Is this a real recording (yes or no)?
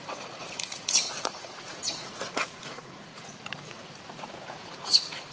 no